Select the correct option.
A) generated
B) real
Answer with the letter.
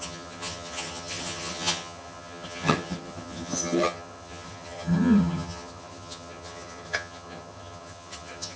A